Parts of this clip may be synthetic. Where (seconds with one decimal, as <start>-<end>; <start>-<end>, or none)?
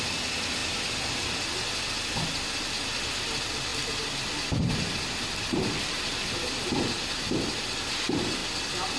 0.6-1.5